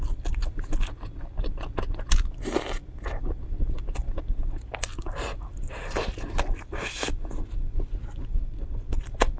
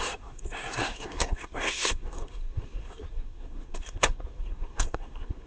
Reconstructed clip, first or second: second